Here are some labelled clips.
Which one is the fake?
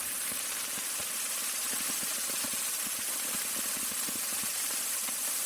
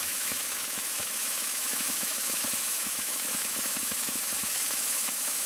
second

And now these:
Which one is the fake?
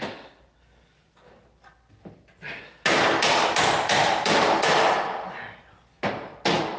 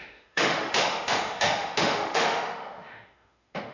second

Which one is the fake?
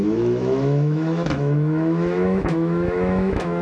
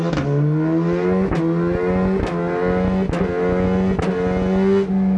first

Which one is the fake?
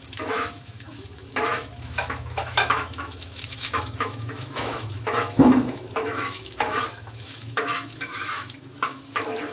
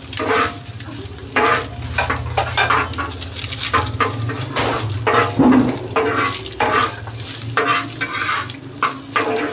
first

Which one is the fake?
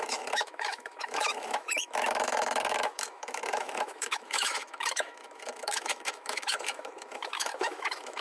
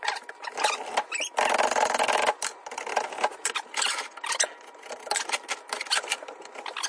first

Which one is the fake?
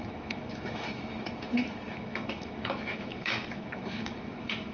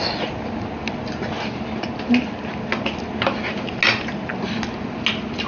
first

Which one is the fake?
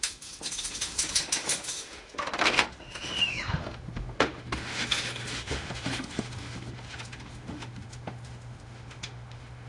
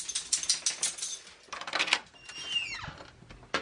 first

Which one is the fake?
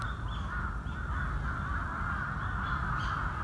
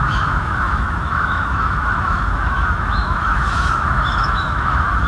second